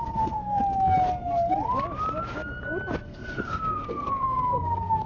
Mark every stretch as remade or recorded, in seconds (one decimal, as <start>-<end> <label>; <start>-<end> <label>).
0.0-0.6 remade; 0.6-3.0 recorded; 3.0-5.1 remade